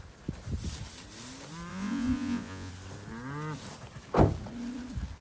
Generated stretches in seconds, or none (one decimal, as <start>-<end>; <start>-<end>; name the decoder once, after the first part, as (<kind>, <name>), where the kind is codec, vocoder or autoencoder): 1.7-2.7 (vocoder, Vocos)